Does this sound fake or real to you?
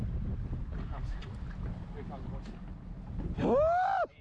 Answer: real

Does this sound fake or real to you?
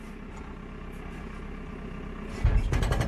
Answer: real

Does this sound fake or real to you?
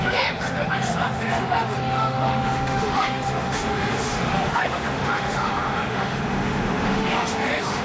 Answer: fake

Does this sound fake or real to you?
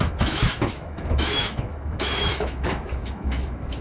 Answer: fake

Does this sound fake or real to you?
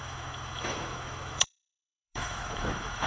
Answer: fake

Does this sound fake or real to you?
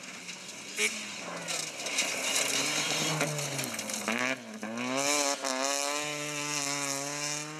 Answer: real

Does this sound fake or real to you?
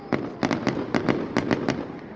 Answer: real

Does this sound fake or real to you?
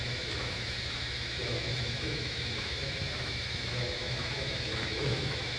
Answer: fake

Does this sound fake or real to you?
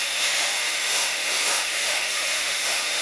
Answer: fake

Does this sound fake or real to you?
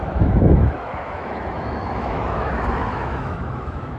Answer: fake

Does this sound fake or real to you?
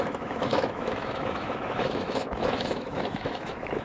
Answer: fake